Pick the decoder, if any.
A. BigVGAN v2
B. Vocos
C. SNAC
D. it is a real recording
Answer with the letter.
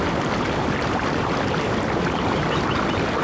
D